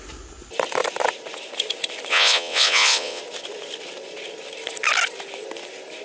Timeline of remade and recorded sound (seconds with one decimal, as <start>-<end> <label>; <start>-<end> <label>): 0.0-2.1 recorded; 2.1-3.2 remade; 3.2-6.0 recorded